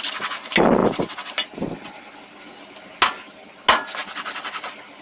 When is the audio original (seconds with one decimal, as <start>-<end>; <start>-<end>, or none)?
0.0-5.0